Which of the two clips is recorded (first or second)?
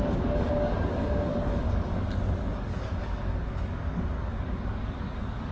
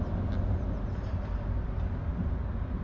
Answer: second